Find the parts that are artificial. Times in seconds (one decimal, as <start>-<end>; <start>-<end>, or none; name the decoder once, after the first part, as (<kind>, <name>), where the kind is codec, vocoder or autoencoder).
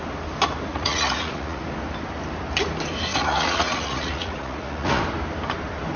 0.7-1.6 (vocoder, Vocos); 3.1-5.0